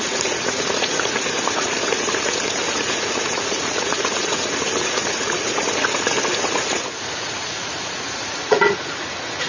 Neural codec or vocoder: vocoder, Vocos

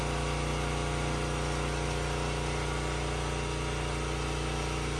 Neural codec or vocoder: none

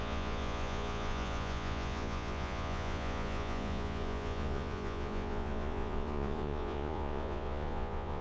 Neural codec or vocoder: vocoder, Vocos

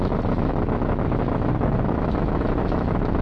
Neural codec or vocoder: autoencoder, DAC-VAE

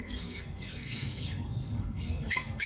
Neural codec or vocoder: codec, SNAC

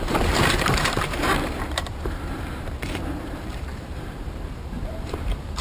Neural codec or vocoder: vocoder, BigVGAN v2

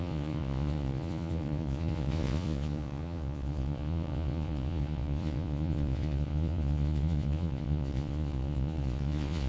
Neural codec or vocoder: vocoder, Vocos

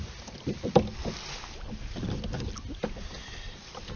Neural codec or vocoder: none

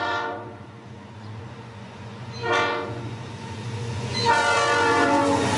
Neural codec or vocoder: vocoder, Vocos